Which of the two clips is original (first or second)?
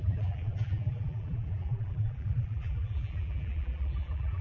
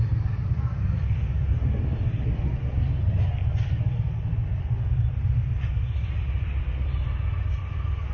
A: second